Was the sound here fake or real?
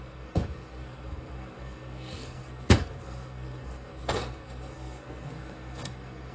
fake